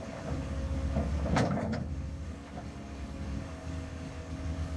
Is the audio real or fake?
fake